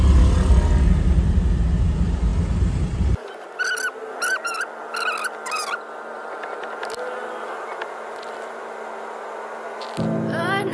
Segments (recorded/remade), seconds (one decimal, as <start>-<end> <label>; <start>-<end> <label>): 0.0-10.7 recorded